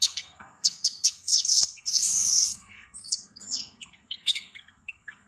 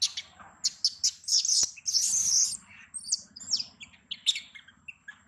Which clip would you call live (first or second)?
second